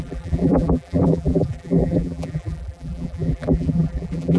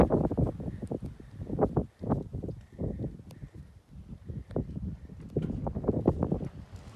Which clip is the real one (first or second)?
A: second